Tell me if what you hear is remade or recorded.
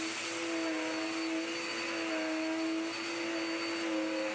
recorded